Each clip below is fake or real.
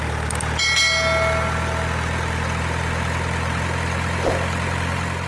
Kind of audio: real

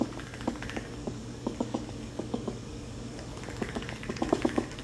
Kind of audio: fake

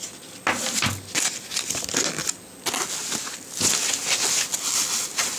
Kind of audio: real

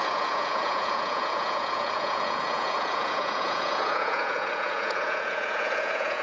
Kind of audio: fake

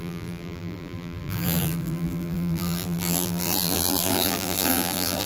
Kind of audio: fake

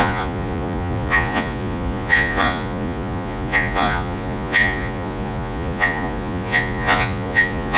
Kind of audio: fake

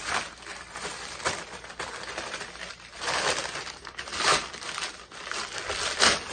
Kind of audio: real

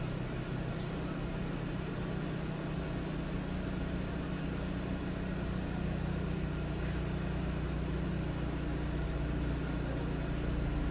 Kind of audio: real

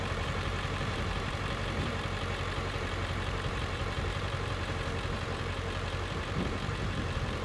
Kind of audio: fake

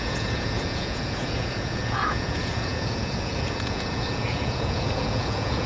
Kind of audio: fake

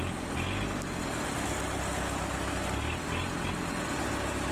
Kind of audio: real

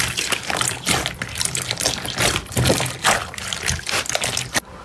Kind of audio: real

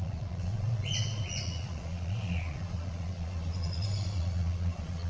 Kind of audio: fake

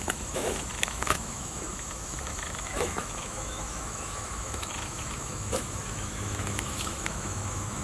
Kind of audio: fake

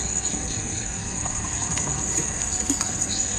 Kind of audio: fake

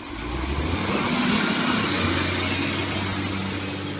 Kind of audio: real